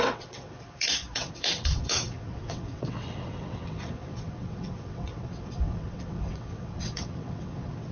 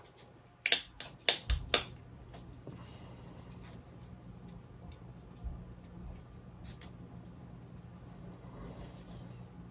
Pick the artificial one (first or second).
first